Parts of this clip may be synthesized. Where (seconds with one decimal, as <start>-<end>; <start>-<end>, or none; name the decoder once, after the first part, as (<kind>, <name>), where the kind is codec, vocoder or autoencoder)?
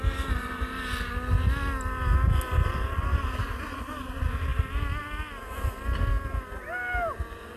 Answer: none